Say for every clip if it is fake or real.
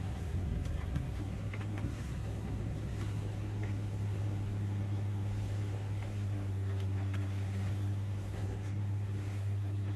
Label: fake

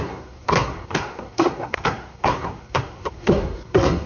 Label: fake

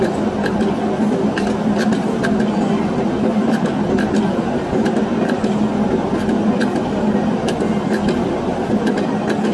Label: real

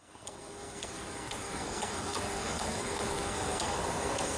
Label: fake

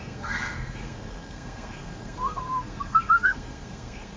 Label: fake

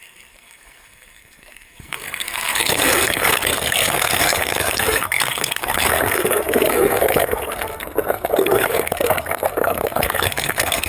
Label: fake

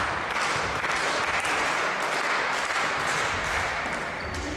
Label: real